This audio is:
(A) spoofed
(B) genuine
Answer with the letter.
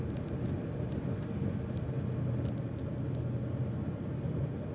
B